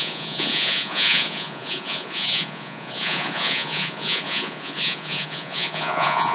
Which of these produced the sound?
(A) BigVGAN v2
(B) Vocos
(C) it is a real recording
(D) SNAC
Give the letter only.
B